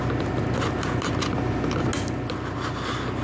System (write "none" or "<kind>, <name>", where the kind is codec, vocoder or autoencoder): none